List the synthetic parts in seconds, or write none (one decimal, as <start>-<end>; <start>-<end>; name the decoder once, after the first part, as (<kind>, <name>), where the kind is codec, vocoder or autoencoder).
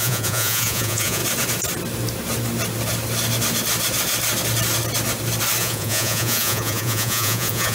0.0-1.2 (vocoder, Vocos); 5.6-7.7